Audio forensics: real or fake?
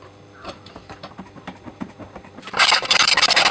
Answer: fake